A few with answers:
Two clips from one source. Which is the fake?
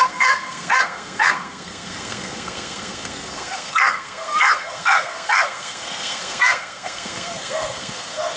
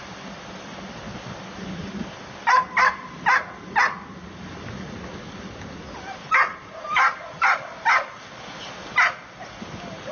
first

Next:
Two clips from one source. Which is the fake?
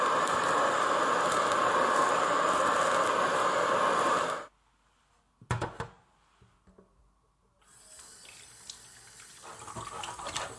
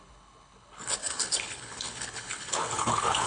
second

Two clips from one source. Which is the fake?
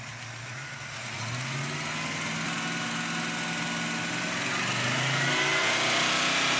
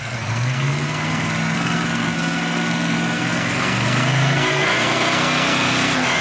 second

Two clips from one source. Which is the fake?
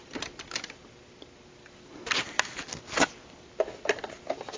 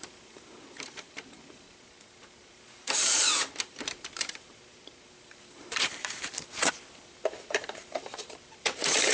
second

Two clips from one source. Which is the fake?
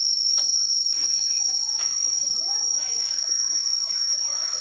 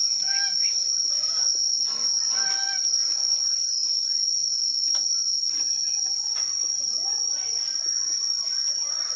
first